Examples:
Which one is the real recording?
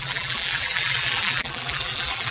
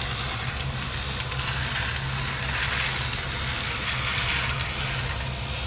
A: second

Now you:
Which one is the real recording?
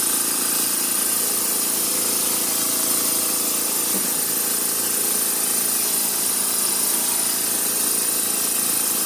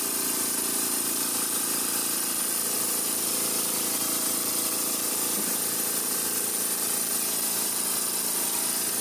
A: first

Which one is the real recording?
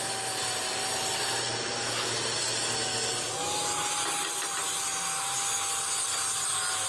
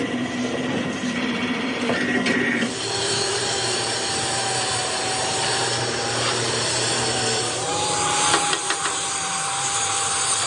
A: first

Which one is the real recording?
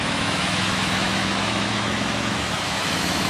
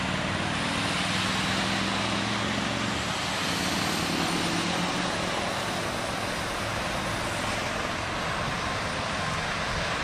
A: second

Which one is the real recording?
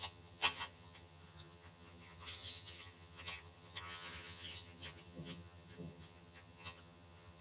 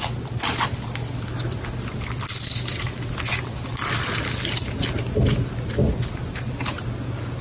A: second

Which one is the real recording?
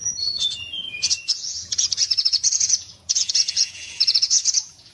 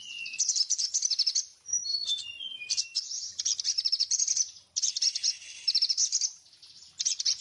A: second